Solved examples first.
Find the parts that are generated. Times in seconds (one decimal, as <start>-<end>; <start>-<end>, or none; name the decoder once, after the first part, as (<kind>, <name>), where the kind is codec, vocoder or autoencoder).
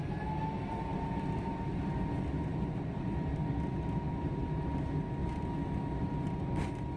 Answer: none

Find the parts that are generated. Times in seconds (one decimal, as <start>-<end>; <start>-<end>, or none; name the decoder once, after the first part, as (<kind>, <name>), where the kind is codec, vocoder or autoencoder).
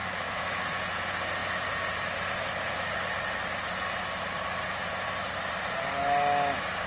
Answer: 0.0-0.7 (autoencoder, DAC-VAE); 6.0-6.9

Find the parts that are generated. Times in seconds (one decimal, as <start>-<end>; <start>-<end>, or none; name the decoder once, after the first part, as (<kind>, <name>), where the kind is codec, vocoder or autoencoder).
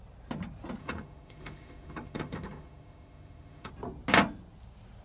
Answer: 0.8-3.7 (autoencoder, DAC-VAE)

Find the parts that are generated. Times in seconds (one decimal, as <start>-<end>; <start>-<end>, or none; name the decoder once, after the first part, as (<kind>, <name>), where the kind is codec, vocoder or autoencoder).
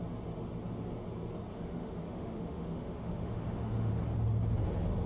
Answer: 1.5-3.9 (autoencoder, DAC-VAE)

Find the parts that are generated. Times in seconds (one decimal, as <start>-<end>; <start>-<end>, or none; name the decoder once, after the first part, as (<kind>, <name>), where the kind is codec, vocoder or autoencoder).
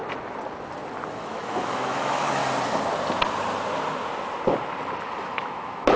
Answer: 1.1-2.4 (autoencoder, DAC-VAE); 5.2-6.0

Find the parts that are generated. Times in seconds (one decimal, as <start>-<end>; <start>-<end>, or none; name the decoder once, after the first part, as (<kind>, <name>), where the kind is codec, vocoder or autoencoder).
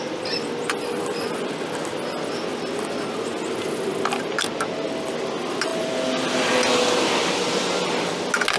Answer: none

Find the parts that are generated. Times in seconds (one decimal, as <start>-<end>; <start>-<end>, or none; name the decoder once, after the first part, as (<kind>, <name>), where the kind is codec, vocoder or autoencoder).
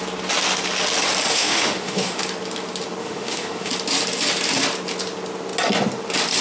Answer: 1.3-2.2 (autoencoder, DAC-VAE); 3.0-3.7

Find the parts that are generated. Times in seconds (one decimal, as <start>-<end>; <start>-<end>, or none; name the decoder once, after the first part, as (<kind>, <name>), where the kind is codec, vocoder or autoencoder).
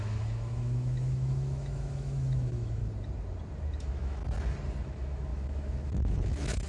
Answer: 0.0-2.8 (autoencoder, DAC-VAE); 3.8-4.2; 4.8-6.7